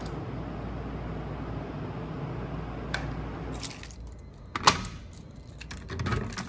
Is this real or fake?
real